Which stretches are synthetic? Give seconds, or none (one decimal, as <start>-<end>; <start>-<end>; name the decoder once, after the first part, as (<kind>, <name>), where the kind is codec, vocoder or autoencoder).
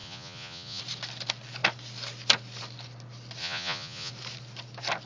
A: 0.0-0.8 (vocoder, Vocos); 3.4-4.1